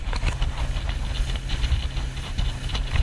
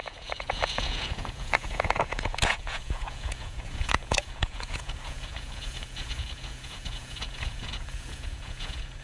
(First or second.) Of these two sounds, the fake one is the second